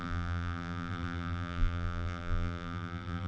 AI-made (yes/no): yes